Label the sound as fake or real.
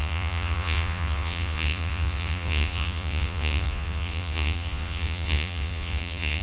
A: fake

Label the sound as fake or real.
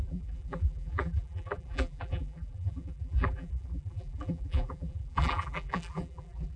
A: fake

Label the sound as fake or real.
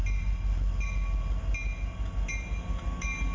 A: real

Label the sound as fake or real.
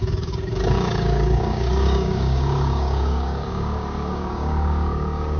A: fake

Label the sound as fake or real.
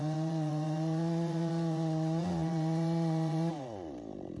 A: fake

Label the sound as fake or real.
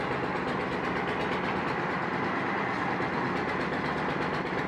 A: real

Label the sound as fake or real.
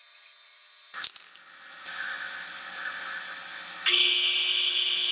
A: real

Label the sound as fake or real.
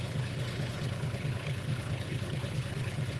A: fake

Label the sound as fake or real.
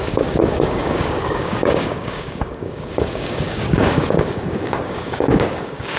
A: fake